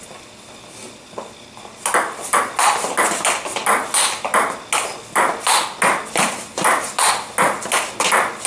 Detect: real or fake real